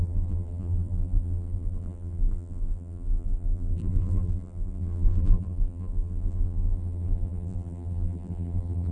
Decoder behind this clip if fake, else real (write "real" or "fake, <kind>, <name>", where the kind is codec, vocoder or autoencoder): fake, vocoder, BigVGAN v2